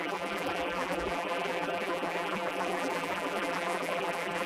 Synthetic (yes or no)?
yes